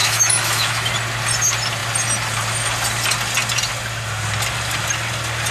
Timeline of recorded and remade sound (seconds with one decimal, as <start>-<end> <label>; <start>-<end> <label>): 0.0-0.9 remade; 0.9-5.5 recorded